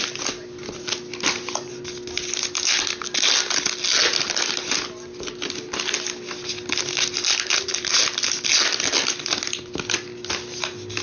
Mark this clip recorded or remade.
recorded